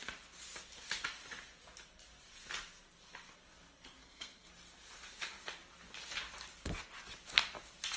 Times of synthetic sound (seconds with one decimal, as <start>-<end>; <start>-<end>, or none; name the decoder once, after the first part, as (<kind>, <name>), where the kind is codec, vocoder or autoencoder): 4.0-4.5 (codec, SNAC)